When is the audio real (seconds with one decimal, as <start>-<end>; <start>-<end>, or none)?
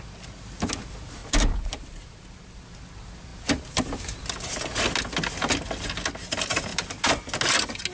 0.0-1.2; 2.6-3.3; 4.2-6.7; 7.2-7.9